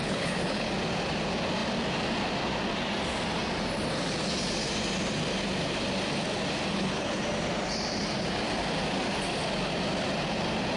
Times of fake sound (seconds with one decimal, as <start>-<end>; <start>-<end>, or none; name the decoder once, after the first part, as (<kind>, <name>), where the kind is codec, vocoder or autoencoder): 0.0-0.7 (codec, HILCodec); 6.7-7.2